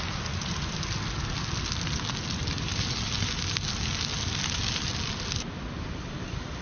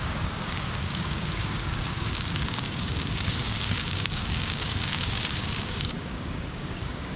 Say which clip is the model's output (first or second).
second